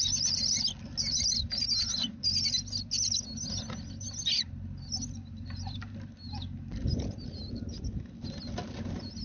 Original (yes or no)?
yes